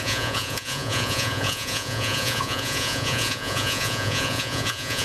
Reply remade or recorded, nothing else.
remade